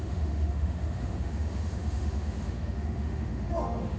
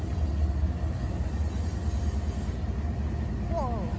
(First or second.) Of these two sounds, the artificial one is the first